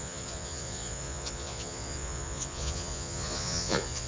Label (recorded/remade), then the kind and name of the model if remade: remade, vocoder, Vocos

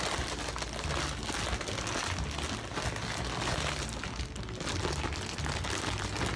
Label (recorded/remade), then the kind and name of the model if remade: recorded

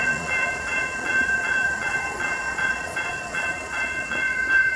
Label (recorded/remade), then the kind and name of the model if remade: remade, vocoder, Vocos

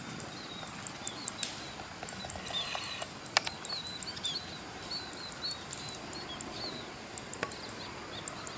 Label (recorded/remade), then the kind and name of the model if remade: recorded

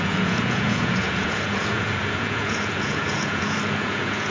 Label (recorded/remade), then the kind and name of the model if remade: remade, vocoder, Vocos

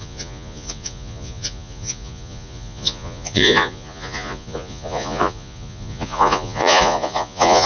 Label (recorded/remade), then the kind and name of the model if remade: remade, vocoder, Vocos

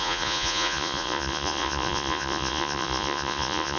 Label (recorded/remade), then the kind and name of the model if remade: remade, vocoder, Vocos